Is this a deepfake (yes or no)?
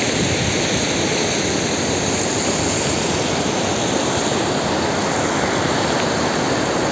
no